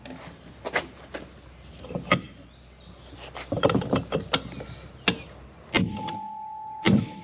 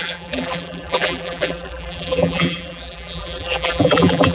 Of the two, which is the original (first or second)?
first